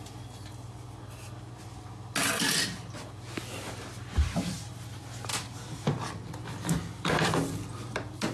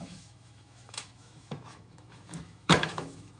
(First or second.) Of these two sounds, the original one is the first